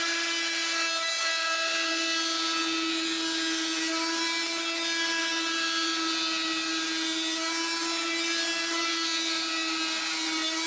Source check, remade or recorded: recorded